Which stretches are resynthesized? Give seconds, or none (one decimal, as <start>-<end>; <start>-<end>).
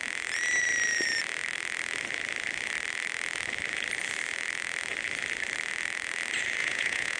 6.6-7.2